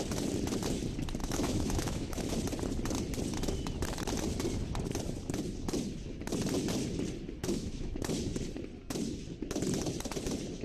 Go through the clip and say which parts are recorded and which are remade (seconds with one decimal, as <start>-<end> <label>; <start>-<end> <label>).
0.0-1.2 recorded; 1.2-2.3 remade; 2.3-7.4 recorded; 7.4-8.1 remade; 8.1-10.6 recorded

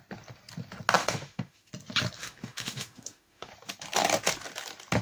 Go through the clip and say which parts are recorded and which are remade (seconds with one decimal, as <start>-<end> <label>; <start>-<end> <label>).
0.0-1.0 recorded; 1.0-1.7 remade; 1.7-2.2 recorded; 2.2-3.5 remade; 3.5-5.0 recorded

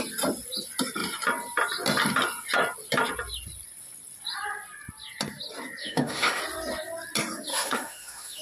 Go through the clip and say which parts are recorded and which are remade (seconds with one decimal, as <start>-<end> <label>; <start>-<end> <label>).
0.0-5.8 recorded; 5.8-6.4 remade; 6.4-7.5 recorded; 7.5-8.4 remade

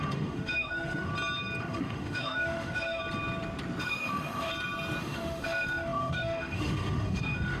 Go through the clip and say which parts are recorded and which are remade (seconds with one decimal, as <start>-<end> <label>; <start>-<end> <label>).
0.0-1.1 remade; 1.1-1.6 recorded; 1.6-3.0 remade; 3.0-3.8 recorded; 3.8-4.5 remade; 4.5-5.0 recorded; 5.0-7.6 remade

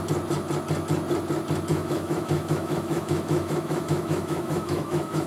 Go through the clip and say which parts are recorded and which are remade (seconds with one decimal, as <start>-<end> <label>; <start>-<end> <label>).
0.0-1.7 recorded; 1.7-5.3 remade